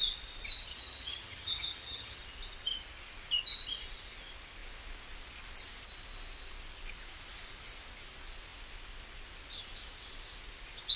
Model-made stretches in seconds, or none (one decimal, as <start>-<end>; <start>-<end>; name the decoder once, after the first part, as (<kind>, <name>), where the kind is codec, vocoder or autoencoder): 0.7-2.2 (vocoder, HiFi-GAN)